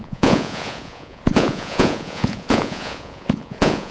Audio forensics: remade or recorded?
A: remade